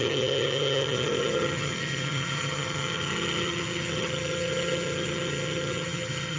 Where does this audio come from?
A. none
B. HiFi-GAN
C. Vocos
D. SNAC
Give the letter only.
B